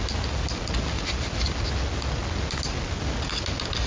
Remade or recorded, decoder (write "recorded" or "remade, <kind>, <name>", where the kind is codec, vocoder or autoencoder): recorded